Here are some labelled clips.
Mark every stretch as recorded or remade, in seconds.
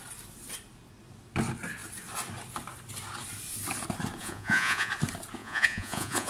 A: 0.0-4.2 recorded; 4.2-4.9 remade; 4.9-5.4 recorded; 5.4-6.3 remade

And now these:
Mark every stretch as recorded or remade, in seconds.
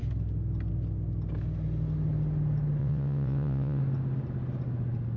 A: 0.0-2.8 recorded; 2.8-3.8 remade; 3.8-5.2 recorded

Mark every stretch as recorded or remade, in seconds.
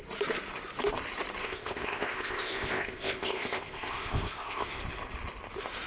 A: 0.0-1.4 recorded; 1.4-4.8 remade; 4.8-5.9 recorded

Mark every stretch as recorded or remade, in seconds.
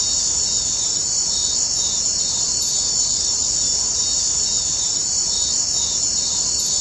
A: 0.0-6.8 recorded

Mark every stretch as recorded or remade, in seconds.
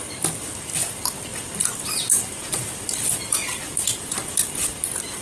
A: 0.0-5.2 recorded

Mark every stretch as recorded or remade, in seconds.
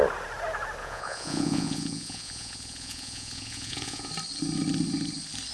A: 0.0-0.8 recorded; 0.8-4.1 remade; 4.1-5.5 recorded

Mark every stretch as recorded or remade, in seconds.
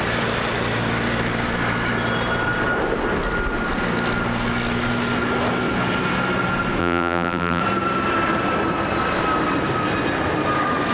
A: 0.0-6.8 recorded; 6.8-7.6 remade; 7.6-10.9 recorded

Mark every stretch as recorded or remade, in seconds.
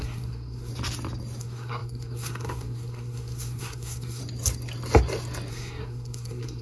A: 0.0-0.7 remade; 0.7-1.4 recorded; 1.4-4.2 remade; 4.2-5.5 recorded; 5.5-6.6 remade